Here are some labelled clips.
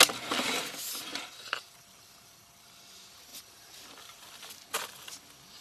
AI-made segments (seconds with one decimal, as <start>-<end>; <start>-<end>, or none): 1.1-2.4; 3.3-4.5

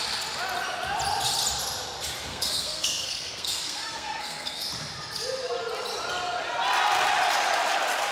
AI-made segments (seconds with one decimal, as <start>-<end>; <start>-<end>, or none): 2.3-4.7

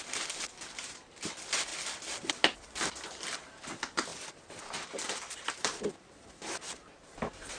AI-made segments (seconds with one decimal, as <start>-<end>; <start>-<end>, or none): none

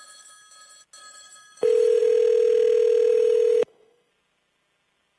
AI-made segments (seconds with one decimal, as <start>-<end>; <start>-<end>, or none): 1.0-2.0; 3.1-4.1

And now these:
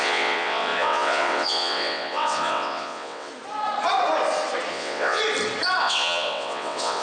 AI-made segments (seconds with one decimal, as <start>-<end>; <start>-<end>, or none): 0.0-3.3; 4.7-5.2; 5.8-7.0

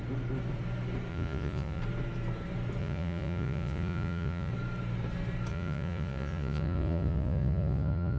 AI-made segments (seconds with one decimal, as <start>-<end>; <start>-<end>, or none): 1.1-1.8; 2.8-4.5; 5.5-8.2